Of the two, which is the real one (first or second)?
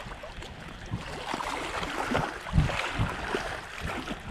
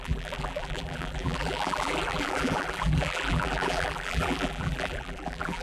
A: first